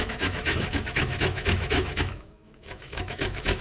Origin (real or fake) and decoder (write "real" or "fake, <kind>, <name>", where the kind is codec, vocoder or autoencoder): fake, autoencoder, DAC-VAE